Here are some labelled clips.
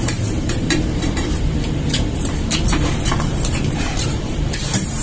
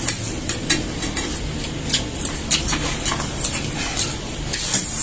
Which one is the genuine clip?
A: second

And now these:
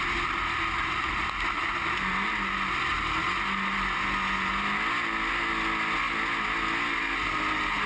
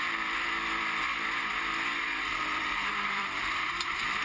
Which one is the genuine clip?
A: first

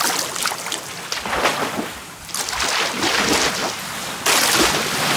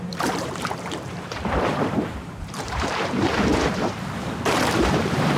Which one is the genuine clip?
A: first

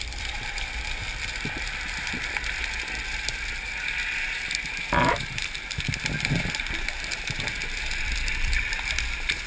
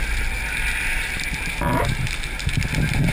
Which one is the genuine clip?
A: second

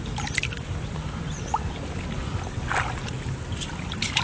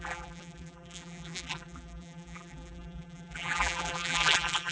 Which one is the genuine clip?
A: first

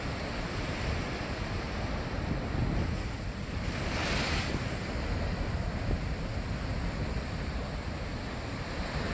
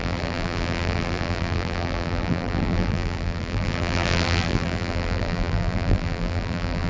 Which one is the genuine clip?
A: first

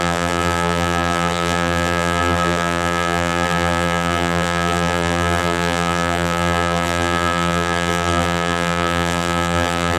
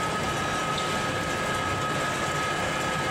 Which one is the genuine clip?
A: second